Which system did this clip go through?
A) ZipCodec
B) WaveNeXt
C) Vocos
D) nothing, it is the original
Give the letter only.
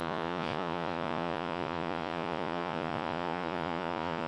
C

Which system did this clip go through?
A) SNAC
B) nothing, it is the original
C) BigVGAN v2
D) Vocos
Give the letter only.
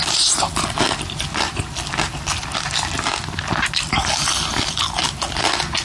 B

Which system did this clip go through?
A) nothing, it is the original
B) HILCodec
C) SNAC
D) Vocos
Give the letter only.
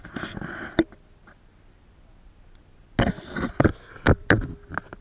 A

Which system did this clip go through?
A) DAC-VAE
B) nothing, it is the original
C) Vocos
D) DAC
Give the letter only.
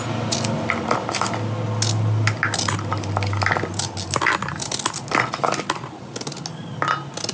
B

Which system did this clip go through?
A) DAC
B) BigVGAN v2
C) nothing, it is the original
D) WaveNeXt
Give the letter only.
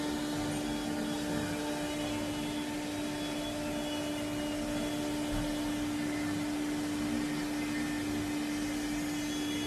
C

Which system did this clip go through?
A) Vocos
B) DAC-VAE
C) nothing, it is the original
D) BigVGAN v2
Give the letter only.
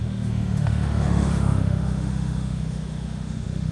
B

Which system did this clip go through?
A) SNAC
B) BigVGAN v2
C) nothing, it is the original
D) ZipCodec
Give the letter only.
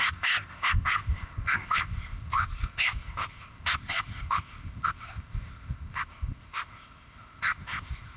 D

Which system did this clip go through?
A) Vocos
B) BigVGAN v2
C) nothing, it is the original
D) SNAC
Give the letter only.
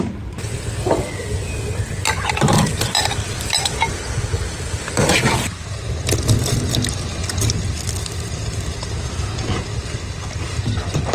C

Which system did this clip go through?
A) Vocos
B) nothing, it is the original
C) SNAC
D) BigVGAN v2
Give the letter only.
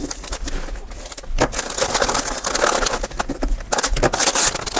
B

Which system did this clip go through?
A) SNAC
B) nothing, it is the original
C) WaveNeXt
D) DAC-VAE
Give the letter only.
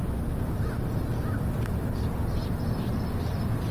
B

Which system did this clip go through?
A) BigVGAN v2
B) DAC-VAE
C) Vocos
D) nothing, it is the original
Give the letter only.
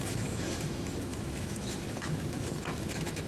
B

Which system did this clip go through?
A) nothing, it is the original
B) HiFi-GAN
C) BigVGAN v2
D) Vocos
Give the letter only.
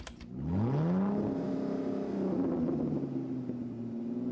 A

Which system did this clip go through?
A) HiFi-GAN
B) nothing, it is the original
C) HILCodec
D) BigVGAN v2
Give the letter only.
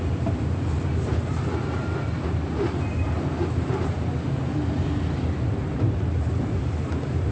D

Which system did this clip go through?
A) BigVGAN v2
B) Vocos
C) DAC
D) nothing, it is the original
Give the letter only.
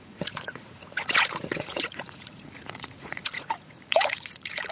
B